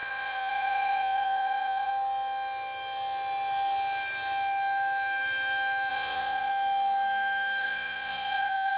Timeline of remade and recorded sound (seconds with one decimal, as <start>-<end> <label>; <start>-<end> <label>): 0.0-1.9 remade; 1.9-5.9 recorded; 5.9-6.5 remade; 6.5-7.6 recorded; 7.6-8.8 remade